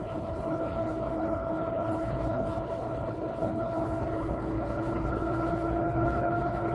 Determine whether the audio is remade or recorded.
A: remade